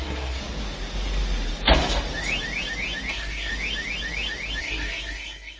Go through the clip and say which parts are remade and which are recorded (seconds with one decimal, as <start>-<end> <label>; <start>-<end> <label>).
0.0-0.4 remade; 0.4-3.1 recorded; 3.1-3.5 remade; 3.5-4.6 recorded; 4.6-5.6 remade